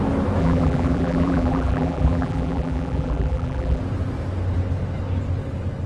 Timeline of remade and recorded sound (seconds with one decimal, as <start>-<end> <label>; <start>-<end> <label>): 0.0-0.4 recorded; 0.4-3.8 remade; 3.8-5.9 recorded